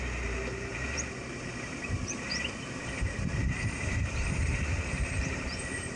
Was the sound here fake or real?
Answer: fake